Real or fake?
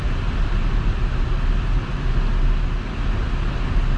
real